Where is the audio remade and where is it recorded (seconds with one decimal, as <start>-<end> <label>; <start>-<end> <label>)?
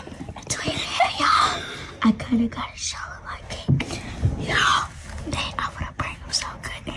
0.0-7.0 recorded